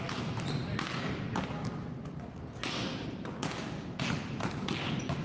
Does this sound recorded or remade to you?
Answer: recorded